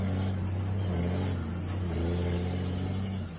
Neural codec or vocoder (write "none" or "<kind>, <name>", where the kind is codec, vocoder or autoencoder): none